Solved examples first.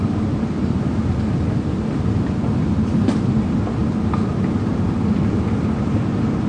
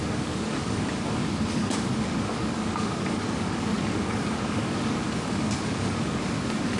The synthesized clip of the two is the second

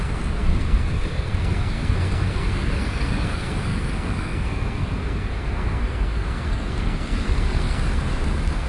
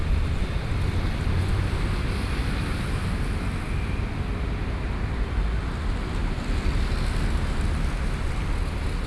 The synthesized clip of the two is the first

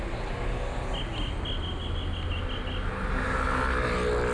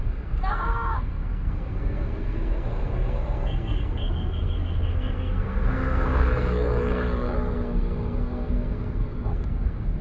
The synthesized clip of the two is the second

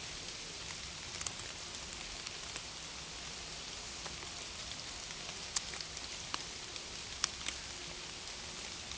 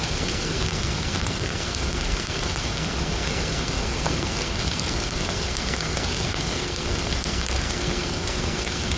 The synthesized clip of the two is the second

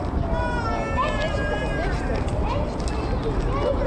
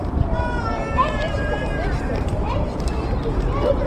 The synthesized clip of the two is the second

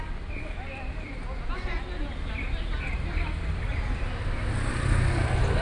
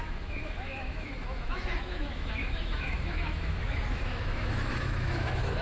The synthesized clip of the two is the second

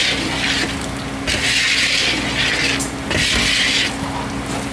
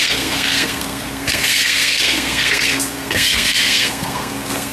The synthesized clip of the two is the second